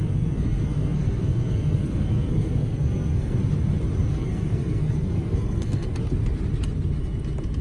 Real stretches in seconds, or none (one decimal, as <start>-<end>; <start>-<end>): 3.4-4.1; 5.9-7.6